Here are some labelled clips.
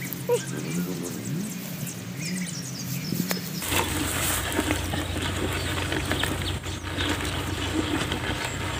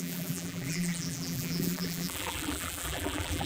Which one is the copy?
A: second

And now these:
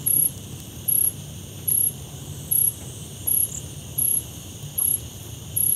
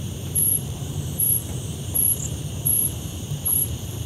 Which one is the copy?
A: second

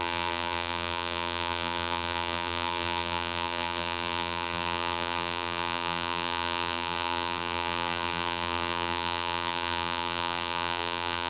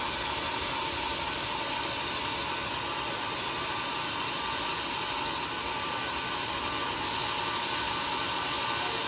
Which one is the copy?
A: first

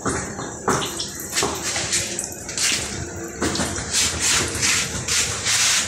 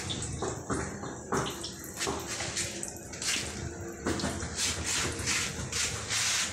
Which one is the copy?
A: first